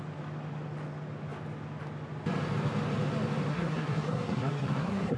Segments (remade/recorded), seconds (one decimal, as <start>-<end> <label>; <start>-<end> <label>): 0.0-3.5 recorded; 3.5-5.2 remade